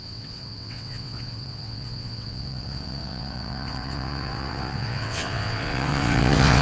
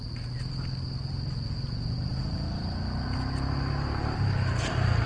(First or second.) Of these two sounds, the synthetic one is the first